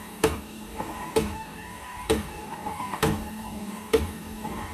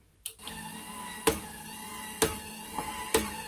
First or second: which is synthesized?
first